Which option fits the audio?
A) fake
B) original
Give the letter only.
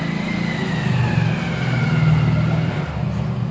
B